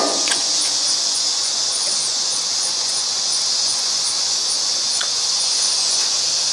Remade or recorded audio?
remade